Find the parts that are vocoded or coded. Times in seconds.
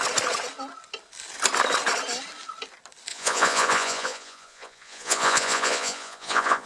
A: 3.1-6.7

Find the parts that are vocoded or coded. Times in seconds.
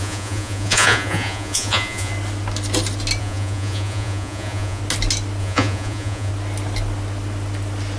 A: 0.0-2.1; 3.2-4.8; 5.4-6.3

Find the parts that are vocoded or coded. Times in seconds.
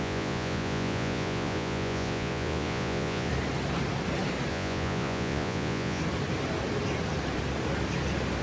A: 0.0-3.3; 4.5-6.0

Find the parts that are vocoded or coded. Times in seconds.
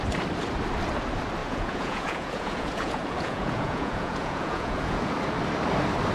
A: 1.4-5.1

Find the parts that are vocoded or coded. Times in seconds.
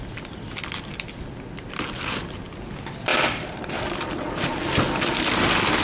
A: none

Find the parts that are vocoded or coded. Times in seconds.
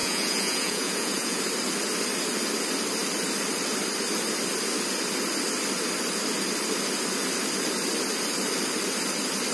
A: 0.0-1.4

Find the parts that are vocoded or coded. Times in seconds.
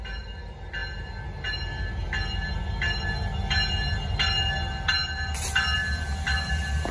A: none